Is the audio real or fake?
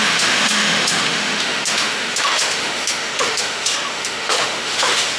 fake